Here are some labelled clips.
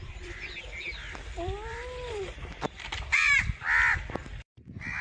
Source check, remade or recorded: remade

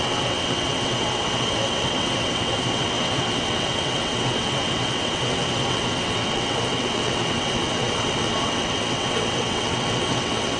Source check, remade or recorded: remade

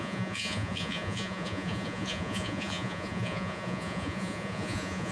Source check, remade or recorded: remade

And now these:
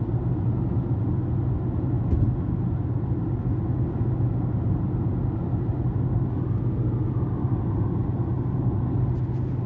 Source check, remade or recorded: recorded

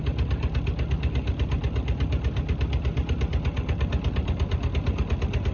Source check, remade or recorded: recorded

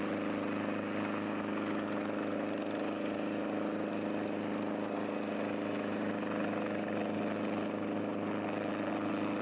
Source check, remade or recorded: recorded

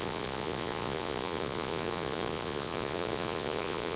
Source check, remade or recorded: remade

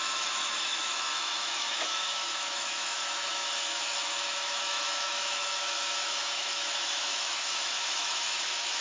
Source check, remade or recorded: remade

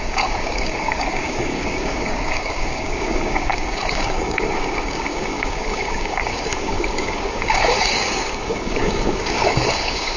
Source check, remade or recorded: remade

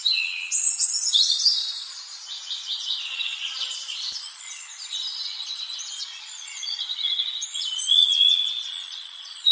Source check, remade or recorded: remade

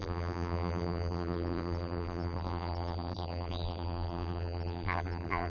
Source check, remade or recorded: remade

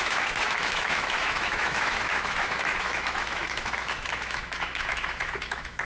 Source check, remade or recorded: remade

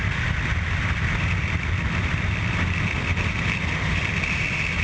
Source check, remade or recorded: recorded